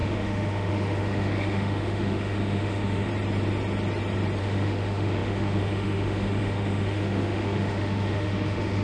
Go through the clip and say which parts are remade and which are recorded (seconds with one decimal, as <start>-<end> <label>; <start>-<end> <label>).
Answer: 0.0-3.1 remade; 3.1-4.4 recorded; 4.4-8.8 remade